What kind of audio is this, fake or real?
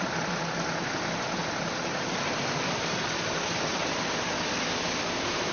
real